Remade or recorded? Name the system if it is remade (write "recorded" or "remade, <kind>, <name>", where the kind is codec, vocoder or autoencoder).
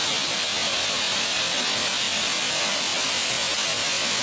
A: recorded